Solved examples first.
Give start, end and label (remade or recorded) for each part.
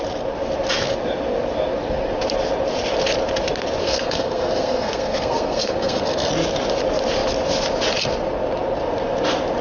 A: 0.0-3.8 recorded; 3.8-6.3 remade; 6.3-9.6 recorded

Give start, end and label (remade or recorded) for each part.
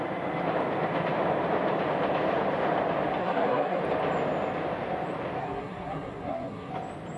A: 0.0-3.2 recorded; 3.2-3.8 remade; 3.8-5.4 recorded; 5.4-6.7 remade; 6.7-7.2 recorded